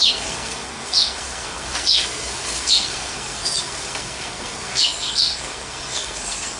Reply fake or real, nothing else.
fake